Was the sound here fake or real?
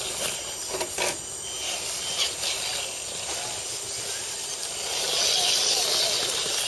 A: real